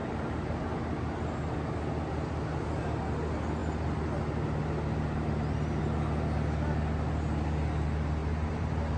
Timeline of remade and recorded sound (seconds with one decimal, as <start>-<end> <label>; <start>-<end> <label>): 0.0-0.6 remade; 0.6-8.2 recorded; 8.2-9.0 remade